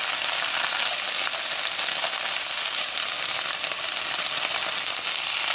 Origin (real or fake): real